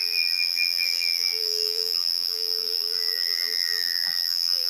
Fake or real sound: fake